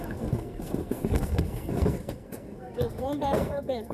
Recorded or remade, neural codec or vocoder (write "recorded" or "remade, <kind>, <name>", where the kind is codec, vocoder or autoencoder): remade, codec, SNAC